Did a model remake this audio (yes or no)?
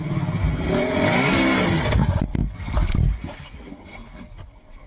no